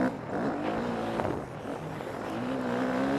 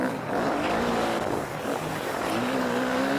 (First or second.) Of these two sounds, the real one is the first